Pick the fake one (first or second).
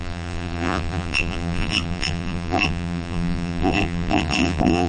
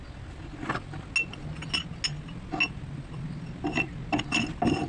first